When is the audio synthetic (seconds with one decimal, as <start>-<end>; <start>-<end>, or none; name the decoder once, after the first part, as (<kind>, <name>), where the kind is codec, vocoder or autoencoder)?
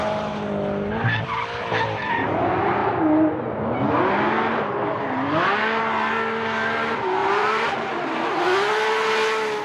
7.2-8.0 (vocoder, BigVGAN v2)